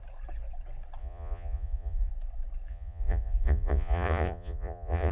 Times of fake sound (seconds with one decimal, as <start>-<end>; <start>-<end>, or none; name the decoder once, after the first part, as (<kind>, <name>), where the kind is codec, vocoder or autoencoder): 1.0-2.1 (vocoder, Vocos); 2.7-5.1

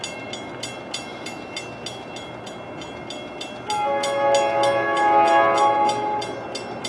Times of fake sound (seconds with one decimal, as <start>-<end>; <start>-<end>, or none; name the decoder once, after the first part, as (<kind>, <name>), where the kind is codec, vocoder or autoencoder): none

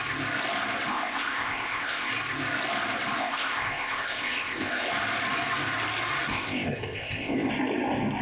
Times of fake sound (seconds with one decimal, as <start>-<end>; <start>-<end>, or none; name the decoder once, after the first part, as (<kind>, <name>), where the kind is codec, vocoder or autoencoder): 0.9-2.1 (codec, ZipCodec); 3.2-4.9; 6.3-7.5

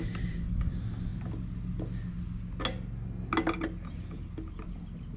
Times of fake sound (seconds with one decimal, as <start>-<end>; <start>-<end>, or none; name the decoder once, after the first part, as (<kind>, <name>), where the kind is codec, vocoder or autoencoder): none

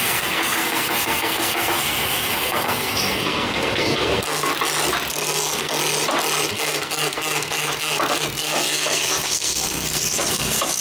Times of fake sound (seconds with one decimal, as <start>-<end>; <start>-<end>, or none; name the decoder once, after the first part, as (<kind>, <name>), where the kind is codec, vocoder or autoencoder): 0.0-4.5 (codec, SNAC); 5.1-5.8; 6.5-10.8

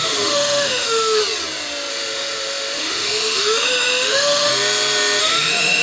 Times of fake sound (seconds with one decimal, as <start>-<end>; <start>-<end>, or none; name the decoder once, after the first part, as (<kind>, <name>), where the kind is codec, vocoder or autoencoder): 0.0-1.2 (autoencoder, DAC-VAE); 1.9-4.5; 5.2-5.8

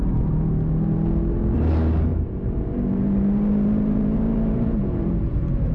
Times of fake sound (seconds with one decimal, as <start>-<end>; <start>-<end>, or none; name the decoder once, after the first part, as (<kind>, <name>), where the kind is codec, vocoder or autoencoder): 2.1-5.7 (vocoder, BigVGAN v2)

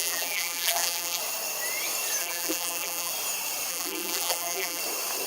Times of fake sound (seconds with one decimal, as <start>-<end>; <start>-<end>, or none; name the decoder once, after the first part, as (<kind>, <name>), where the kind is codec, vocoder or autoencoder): 0.0-1.2 (vocoder, BigVGAN v2); 2.2-3.1; 3.7-4.8